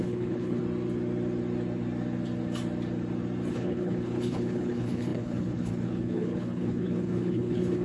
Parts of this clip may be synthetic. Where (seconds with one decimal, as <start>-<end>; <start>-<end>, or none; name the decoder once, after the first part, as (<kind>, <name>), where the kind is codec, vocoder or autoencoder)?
0.0-0.6 (codec, HILCodec); 3.5-7.8